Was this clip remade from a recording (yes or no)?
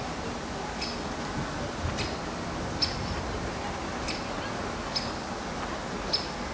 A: no